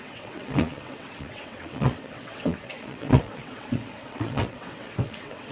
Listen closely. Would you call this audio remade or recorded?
remade